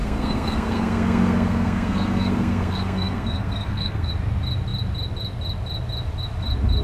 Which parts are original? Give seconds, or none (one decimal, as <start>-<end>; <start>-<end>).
4.1-6.8